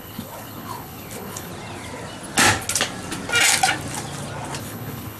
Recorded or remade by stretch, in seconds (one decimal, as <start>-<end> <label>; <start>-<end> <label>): 0.0-1.5 remade; 1.5-4.6 recorded; 4.6-5.2 remade